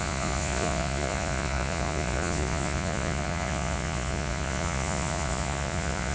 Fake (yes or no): yes